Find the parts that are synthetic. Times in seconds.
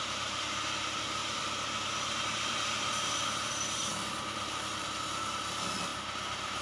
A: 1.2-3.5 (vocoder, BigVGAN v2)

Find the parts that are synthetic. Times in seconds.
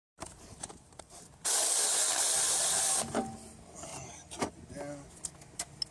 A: 0.0-1.7 (vocoder, BigVGAN v2)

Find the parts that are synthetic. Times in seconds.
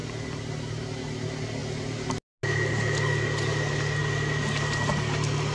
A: none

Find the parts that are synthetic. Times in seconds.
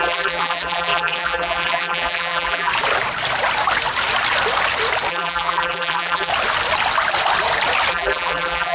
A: 0.0-2.7 (vocoder, BigVGAN v2); 5.1-6.3; 7.9-8.7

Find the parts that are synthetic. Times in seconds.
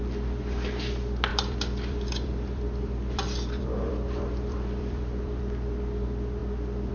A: 1.3-5.4 (vocoder, BigVGAN v2)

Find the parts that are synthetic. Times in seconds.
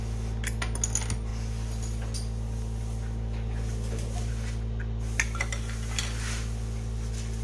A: none